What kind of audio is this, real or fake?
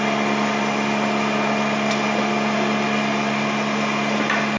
real